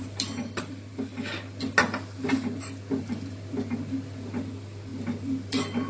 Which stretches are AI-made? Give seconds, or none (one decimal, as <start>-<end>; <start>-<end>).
none